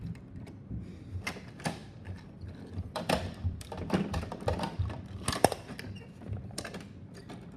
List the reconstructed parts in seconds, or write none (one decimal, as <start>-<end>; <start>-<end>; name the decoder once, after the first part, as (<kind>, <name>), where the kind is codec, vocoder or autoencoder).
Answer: 0.0-7.6 (vocoder, BigVGAN v2)